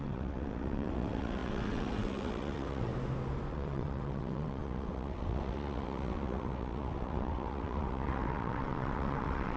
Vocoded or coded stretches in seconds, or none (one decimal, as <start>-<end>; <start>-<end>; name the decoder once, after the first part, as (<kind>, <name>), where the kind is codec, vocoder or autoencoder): 0.0-2.9 (vocoder, WaveNeXt); 3.5-9.6